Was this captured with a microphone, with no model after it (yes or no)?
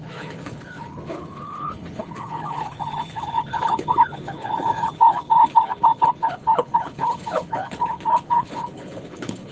no